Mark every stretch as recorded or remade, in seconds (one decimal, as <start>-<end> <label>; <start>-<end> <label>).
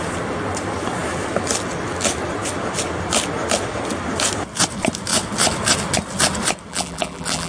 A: 0.0-6.7 recorded; 6.7-7.5 remade